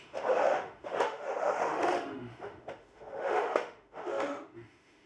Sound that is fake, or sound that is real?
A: fake